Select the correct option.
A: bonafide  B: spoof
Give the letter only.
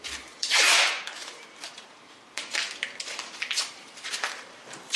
B